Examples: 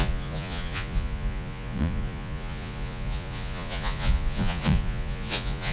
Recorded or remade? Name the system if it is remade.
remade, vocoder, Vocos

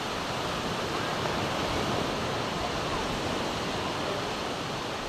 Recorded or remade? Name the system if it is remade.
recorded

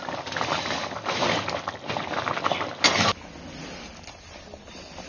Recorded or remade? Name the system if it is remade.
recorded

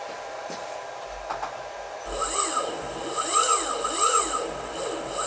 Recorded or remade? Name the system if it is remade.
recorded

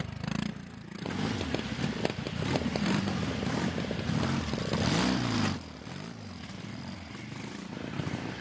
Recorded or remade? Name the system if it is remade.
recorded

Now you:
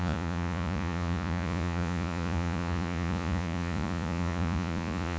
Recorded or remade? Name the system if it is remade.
remade, vocoder, Vocos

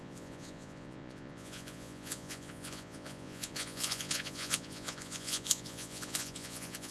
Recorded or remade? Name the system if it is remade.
remade, vocoder, Vocos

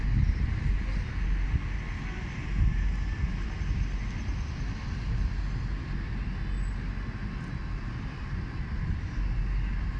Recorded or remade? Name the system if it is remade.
recorded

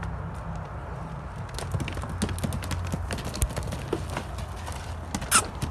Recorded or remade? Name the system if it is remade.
recorded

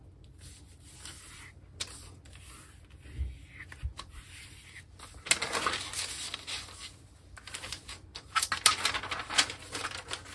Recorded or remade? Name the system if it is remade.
recorded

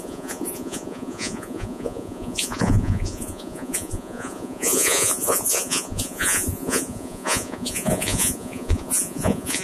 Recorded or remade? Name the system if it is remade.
remade, vocoder, Vocos